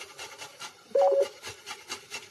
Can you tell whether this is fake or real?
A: real